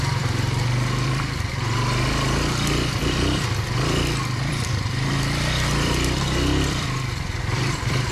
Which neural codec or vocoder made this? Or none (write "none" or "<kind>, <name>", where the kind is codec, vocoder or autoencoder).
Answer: vocoder, BigVGAN v2